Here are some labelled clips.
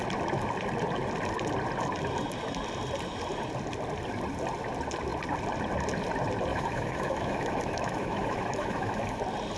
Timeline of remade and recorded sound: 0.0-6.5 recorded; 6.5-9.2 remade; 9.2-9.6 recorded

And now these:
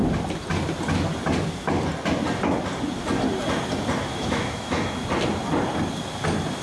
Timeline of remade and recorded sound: 0.0-4.1 recorded; 4.1-4.9 remade; 4.9-6.6 recorded